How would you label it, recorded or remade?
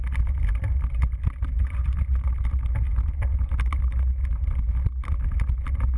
recorded